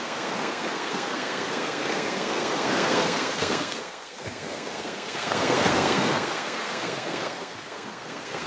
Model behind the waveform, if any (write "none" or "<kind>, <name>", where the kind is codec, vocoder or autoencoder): codec, SNAC